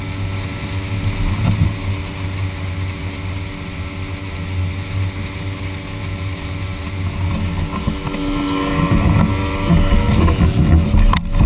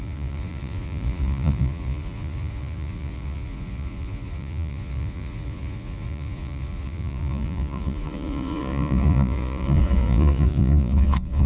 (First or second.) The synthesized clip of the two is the second